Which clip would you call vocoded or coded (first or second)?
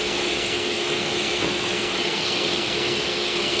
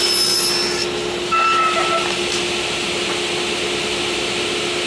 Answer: first